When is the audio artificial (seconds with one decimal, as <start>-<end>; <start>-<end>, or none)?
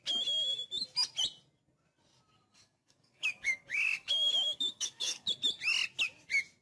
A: 2.5-5.3